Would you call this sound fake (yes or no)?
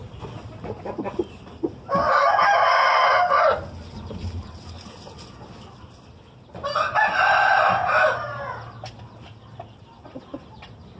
no